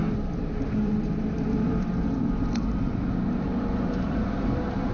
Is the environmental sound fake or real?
fake